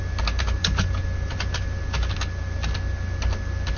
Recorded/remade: recorded